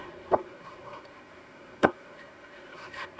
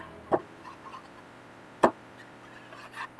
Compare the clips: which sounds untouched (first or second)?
second